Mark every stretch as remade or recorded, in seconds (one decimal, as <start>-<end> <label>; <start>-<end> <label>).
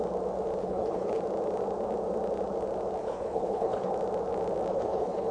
0.0-0.6 recorded; 0.6-1.2 remade; 1.2-3.0 recorded; 3.0-3.9 remade; 3.9-4.7 recorded; 4.7-5.3 remade